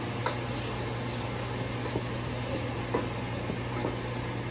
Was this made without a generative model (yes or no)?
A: yes